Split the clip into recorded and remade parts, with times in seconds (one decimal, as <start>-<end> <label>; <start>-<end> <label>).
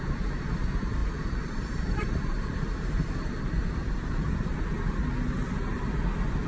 0.0-1.0 recorded; 1.0-4.6 remade; 4.6-6.5 recorded